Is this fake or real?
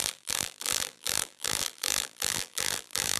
fake